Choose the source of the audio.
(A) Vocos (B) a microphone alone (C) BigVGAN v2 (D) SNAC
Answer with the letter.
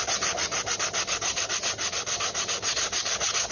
B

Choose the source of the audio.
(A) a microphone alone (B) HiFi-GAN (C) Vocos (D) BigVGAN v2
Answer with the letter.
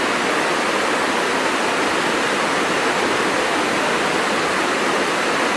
A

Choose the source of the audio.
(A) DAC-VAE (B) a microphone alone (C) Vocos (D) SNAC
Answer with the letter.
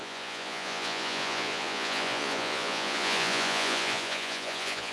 C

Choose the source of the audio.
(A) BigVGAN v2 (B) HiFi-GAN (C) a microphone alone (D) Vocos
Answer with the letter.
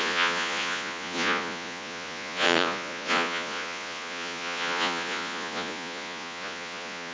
D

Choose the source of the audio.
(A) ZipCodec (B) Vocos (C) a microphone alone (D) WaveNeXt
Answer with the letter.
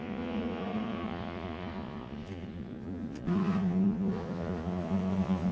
B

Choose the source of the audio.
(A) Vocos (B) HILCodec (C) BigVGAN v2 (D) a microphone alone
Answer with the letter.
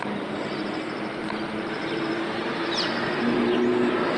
D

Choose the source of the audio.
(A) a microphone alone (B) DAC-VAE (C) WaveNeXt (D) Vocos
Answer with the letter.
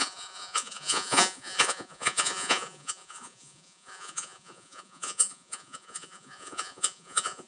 D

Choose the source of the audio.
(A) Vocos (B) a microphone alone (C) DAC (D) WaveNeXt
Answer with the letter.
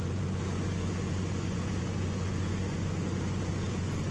A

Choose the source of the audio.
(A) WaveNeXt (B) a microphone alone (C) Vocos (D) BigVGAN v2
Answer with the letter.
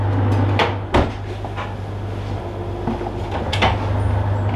B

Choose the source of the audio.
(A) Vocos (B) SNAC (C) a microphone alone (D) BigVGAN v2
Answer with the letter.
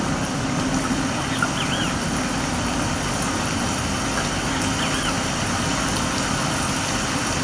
C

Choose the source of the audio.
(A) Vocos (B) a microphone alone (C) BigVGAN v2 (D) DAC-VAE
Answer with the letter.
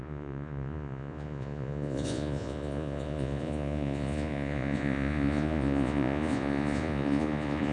A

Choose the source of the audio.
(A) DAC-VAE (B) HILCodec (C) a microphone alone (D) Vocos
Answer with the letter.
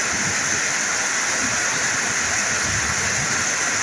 C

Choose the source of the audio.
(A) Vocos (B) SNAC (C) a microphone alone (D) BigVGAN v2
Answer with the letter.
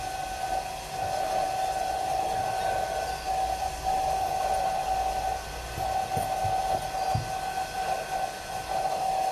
C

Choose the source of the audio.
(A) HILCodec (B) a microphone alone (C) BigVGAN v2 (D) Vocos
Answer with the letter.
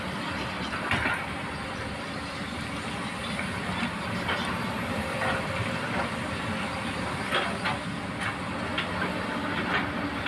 B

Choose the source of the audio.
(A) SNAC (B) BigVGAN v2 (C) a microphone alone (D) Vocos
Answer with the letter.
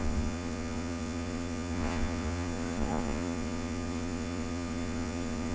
D